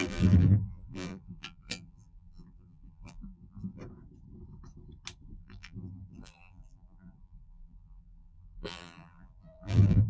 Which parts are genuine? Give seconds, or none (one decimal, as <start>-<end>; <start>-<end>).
3.8-5.4